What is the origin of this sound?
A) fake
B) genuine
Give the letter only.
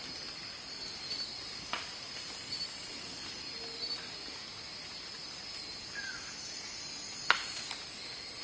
B